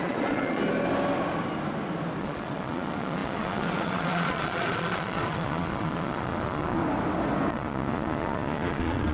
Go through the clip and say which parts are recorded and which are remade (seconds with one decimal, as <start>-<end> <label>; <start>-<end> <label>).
0.0-0.6 remade; 0.6-2.2 recorded; 2.2-6.8 remade; 6.8-7.5 recorded; 7.5-9.1 remade

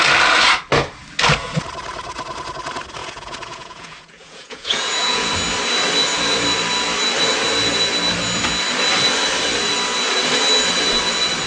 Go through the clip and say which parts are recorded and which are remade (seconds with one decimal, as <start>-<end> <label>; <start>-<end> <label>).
0.0-3.0 recorded; 3.0-5.3 remade; 5.3-11.5 recorded

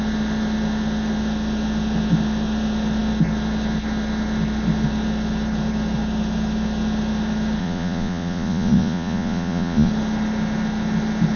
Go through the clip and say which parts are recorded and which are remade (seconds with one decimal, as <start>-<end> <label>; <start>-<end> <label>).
0.0-7.6 recorded; 7.6-9.9 remade; 9.9-11.4 recorded

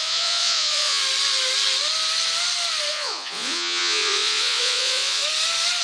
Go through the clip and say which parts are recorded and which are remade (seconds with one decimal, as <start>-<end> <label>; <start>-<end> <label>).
0.0-1.0 remade; 1.0-2.9 recorded; 2.9-5.2 remade; 5.2-5.8 recorded

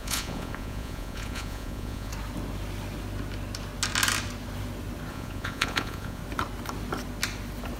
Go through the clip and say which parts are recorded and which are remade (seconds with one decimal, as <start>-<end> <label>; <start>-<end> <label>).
0.0-2.1 remade; 2.1-5.1 recorded; 5.1-6.2 remade; 6.2-7.8 recorded